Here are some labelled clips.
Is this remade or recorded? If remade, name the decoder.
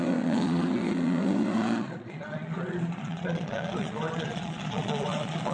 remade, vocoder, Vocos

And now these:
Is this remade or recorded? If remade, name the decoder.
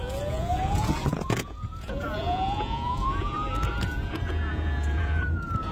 remade, vocoder, Vocos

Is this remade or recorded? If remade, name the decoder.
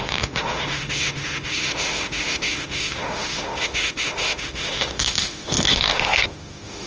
remade, autoencoder, DAC-VAE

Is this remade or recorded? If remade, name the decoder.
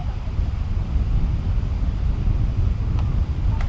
recorded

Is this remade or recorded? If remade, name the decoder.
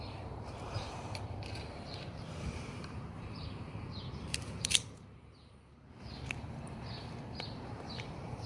remade, vocoder, BigVGAN v2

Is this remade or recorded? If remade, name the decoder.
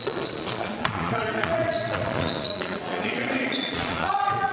remade, vocoder, Vocos